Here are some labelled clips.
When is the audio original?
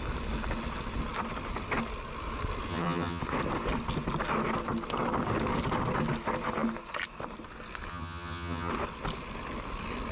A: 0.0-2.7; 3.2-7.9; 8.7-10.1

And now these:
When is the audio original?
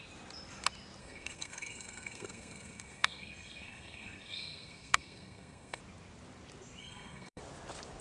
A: 0.0-1.0; 5.8-6.8; 7.4-8.0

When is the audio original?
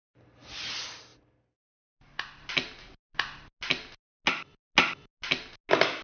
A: 0.0-6.0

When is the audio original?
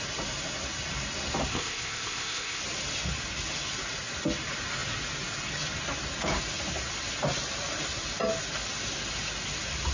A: 0.0-1.5; 2.6-9.9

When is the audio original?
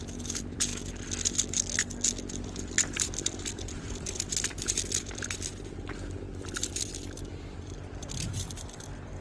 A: 0.7-2.3; 5.5-6.7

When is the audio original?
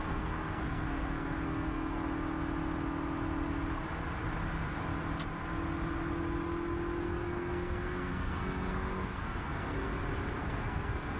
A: 2.1-7.0; 9.9-10.4